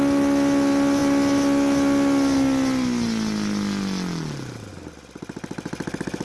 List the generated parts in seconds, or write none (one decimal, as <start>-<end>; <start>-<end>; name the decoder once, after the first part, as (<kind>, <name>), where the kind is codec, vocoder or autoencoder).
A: none